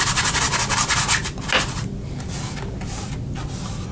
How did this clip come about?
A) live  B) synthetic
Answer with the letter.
A